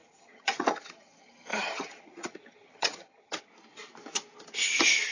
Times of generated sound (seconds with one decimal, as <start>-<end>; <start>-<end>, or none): 0.0-3.5

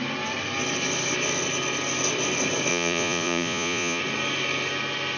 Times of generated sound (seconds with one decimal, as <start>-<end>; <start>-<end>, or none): 2.7-4.0